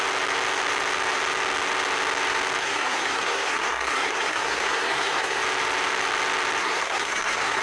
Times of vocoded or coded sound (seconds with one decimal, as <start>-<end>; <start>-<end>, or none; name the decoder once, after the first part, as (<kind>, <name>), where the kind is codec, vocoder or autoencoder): 2.6-5.4 (codec, SNAC); 6.6-7.6